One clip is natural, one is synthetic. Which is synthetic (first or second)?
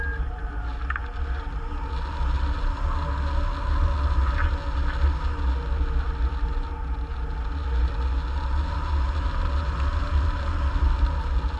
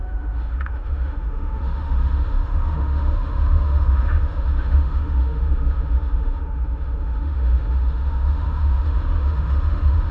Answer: second